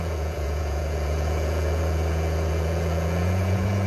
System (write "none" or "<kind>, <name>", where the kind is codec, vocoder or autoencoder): vocoder, Vocos